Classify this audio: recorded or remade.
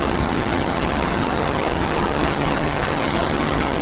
remade